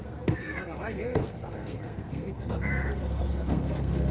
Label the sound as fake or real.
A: fake